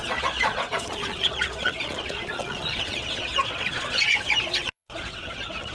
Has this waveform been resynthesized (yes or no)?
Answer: yes